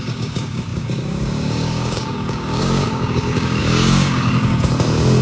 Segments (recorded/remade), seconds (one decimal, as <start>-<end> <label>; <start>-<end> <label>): 0.0-5.2 remade